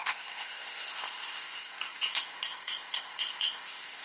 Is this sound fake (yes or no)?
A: yes